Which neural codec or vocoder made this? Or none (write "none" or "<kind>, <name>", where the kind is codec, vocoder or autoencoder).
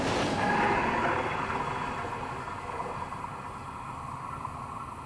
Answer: none